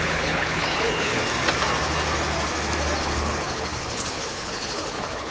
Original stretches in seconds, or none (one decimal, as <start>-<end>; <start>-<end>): 1.2-3.0